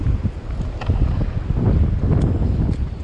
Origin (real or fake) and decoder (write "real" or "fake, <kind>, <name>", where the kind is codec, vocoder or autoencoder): real